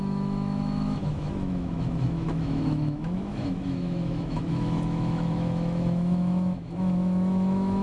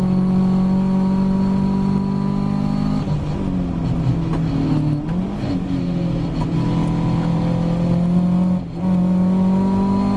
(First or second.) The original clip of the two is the second